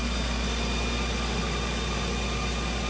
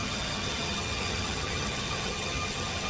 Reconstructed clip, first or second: second